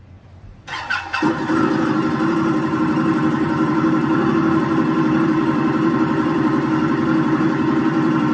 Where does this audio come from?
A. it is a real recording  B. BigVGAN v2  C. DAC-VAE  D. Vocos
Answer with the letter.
B